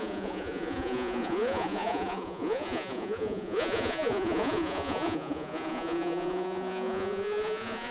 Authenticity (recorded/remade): remade